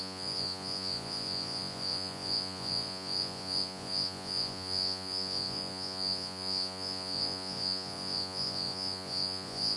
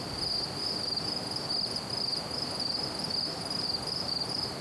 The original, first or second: second